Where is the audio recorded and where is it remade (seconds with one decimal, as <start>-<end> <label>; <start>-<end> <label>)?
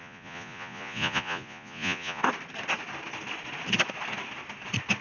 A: 0.0-2.2 remade; 2.2-5.0 recorded